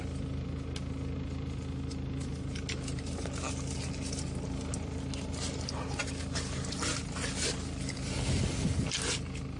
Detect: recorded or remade recorded